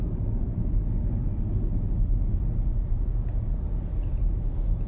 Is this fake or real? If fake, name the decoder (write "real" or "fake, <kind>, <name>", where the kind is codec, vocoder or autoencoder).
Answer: real